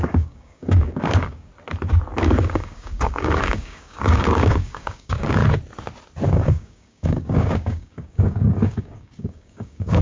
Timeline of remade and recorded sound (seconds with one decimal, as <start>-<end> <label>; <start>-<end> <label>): 0.0-1.5 remade; 1.5-2.2 recorded; 2.2-5.4 remade; 5.4-6.3 recorded; 6.3-10.0 remade